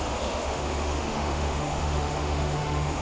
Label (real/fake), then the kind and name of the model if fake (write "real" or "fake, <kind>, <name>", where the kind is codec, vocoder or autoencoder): fake, autoencoder, DAC-VAE